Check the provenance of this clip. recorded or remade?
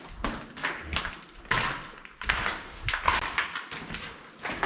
recorded